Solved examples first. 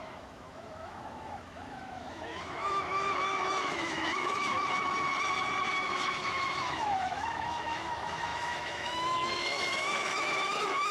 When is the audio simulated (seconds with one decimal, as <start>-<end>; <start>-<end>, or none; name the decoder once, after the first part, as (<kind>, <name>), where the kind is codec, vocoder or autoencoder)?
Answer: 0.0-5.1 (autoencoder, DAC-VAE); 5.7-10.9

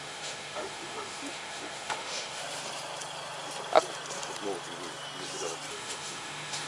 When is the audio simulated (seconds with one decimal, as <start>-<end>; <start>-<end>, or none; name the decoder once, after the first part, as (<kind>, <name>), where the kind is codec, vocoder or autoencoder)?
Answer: 0.0-2.4 (autoencoder, DAC-VAE); 5.7-6.7

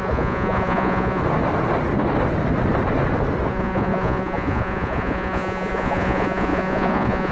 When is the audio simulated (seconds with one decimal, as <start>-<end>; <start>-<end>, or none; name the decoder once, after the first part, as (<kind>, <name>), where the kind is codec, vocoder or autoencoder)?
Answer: 0.0-1.2 (vocoder, Vocos); 3.5-7.3